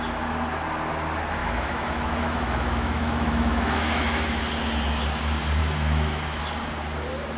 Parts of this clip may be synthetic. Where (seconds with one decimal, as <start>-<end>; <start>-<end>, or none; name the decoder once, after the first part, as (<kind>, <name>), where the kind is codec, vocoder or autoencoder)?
1.4-4.4 (autoencoder, DAC-VAE); 5.6-6.4